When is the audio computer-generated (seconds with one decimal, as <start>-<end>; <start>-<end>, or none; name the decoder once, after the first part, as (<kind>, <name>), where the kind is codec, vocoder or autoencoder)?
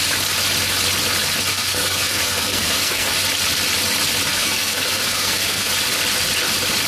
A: 1.5-3.1 (codec, SNAC); 4.3-5.7